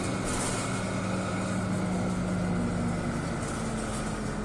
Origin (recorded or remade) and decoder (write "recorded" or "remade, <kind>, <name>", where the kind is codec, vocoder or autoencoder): recorded